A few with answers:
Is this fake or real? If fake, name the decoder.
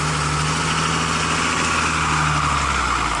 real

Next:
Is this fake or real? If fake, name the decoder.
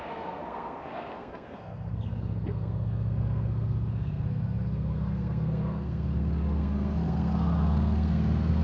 fake, codec, SNAC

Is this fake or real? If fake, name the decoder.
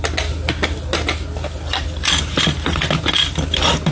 real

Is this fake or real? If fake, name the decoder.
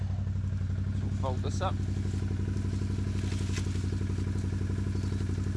real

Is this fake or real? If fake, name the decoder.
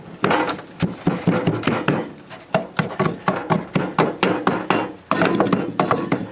real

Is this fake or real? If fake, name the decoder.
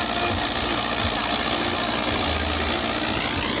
real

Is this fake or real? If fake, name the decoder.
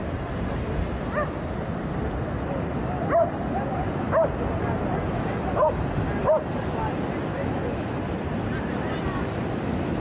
real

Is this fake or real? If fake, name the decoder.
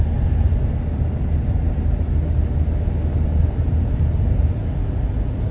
real